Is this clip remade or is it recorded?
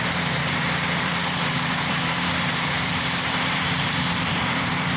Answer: remade